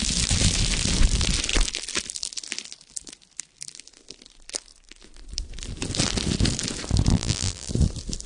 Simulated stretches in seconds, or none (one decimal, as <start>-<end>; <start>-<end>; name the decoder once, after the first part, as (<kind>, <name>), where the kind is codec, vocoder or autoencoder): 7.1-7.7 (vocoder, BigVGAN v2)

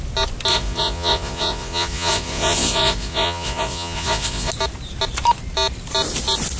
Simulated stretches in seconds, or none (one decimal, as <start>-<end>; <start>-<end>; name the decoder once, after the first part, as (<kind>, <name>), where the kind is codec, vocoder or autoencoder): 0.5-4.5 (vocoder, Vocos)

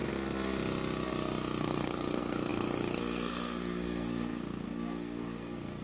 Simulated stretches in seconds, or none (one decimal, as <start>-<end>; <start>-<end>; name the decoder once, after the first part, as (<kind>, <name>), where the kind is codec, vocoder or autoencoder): 1.6-5.8 (codec, SNAC)